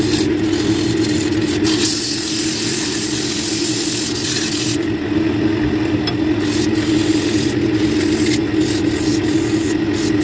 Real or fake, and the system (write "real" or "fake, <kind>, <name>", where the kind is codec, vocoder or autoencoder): real